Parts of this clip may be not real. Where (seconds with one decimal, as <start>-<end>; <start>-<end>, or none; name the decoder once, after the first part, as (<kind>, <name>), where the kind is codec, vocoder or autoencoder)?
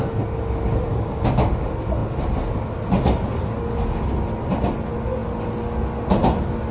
0.9-1.5 (codec, DAC)